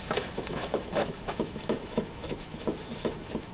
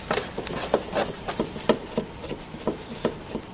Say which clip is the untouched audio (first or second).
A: second